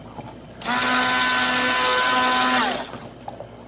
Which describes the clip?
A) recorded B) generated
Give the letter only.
A